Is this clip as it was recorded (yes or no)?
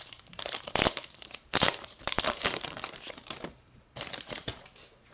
no